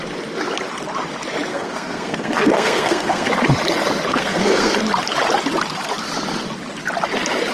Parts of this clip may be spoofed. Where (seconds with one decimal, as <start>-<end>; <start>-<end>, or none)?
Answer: 1.5-3.3; 4.1-4.8

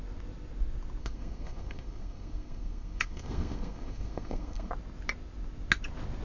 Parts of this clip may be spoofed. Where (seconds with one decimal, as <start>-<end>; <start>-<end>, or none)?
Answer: 1.0-4.7

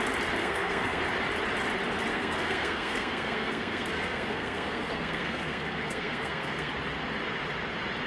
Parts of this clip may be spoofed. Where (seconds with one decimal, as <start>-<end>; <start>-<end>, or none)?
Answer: 0.4-1.0; 2.1-6.7

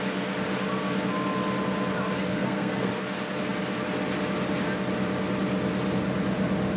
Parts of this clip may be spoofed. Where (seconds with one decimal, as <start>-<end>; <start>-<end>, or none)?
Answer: 2.3-2.9

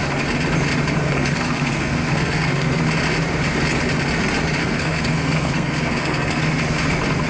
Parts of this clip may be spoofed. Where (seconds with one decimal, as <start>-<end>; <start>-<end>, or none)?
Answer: 1.0-2.8; 4.6-6.4

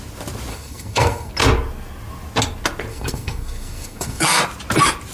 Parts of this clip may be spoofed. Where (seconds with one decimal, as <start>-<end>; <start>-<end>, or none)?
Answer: 0.5-1.3; 2.9-4.4